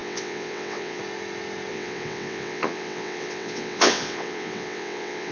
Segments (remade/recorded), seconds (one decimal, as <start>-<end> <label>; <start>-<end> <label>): 0.0-1.0 remade; 1.0-1.7 recorded; 1.7-5.3 remade